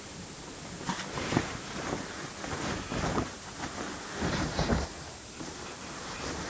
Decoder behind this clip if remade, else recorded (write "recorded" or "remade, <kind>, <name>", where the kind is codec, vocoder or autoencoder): recorded